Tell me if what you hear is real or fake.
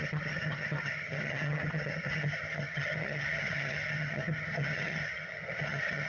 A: fake